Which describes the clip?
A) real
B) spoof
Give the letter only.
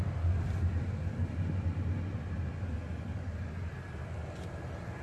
A